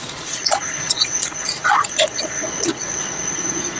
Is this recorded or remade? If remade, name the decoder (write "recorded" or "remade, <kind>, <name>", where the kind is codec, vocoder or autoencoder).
remade, vocoder, Vocos